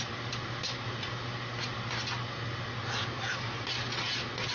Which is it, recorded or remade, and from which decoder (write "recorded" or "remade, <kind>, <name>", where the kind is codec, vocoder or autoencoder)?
recorded